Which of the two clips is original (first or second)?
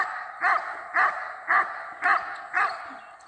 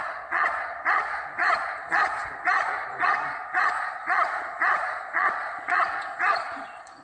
first